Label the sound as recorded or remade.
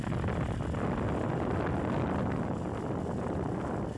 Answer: recorded